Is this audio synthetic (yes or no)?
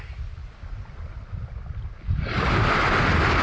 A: no